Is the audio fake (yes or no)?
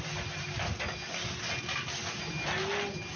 no